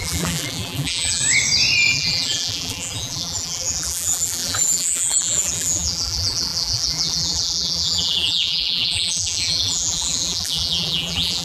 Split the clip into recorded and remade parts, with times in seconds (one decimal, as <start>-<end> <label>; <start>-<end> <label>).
0.0-1.2 remade; 1.2-1.9 recorded; 1.9-11.4 remade